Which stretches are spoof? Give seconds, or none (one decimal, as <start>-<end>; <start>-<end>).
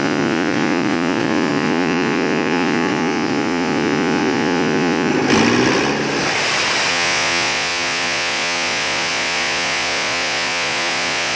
0.0-5.1; 6.9-11.4